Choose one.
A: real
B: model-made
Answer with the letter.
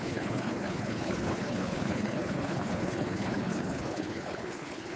B